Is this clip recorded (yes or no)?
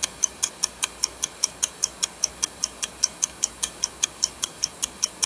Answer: no